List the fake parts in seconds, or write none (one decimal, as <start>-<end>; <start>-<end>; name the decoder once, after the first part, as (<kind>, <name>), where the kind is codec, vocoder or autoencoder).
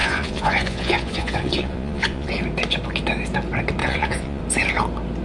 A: 0.0-2.3 (vocoder, Vocos); 3.8-4.4